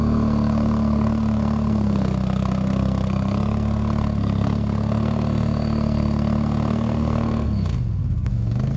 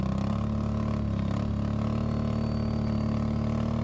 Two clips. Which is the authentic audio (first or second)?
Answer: second